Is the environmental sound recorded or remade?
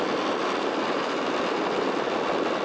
recorded